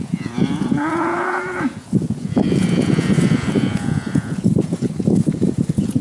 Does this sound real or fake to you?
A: fake